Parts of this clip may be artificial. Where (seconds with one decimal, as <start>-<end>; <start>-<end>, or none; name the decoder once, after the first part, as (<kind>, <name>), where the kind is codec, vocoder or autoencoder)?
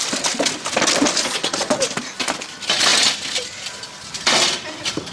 1.2-1.7 (vocoder, Vocos)